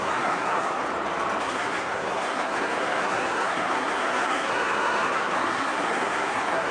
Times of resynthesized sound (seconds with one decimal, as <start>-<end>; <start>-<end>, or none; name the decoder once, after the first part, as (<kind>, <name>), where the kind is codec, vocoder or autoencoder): 0.0-0.8 (codec, SNAC); 1.4-6.7